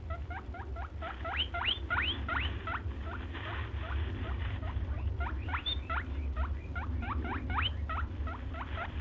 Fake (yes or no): no